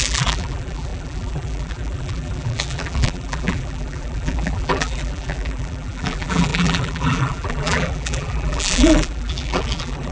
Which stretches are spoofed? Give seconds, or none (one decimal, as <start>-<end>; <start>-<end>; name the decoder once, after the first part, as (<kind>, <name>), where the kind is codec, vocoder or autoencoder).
0.0-10.1 (vocoder, BigVGAN v2)